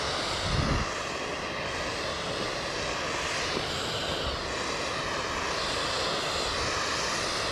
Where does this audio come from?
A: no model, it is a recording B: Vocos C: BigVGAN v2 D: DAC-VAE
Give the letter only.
A